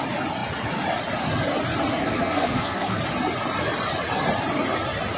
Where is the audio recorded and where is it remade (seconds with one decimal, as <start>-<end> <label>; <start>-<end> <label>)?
0.0-2.0 recorded; 2.0-3.0 remade; 3.0-5.2 recorded

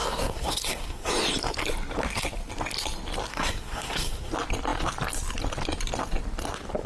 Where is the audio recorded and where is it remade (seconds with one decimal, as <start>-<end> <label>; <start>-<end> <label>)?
0.0-1.1 remade; 1.1-3.3 recorded; 3.3-4.3 remade; 4.3-6.9 recorded